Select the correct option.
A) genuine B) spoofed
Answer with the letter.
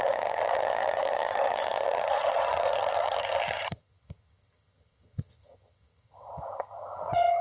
B